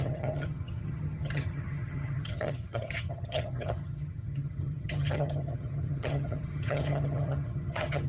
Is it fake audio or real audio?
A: fake